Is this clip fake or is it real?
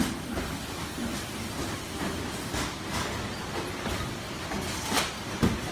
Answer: real